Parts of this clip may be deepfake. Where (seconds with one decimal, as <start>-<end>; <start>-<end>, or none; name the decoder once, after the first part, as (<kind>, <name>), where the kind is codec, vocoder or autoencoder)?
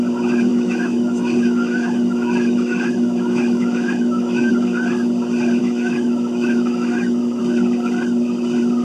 0.5-4.5 (autoencoder, DAC-VAE); 5.6-7.4